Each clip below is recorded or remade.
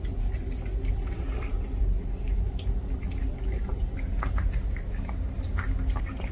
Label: recorded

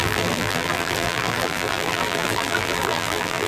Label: remade